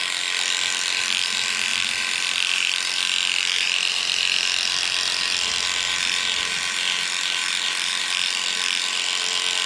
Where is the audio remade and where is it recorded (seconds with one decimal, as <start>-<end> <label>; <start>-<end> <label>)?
0.0-1.7 recorded; 1.7-5.5 remade; 5.5-7.4 recorded; 7.4-8.0 remade; 8.0-9.7 recorded